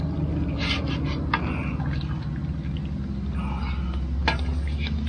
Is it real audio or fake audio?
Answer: real